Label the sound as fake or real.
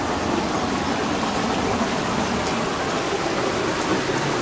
real